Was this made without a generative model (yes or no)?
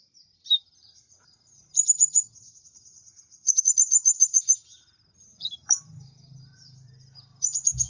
no